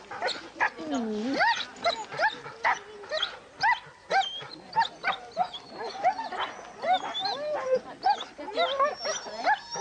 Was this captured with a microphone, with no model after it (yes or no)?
yes